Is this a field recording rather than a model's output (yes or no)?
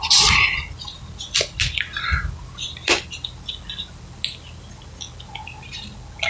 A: yes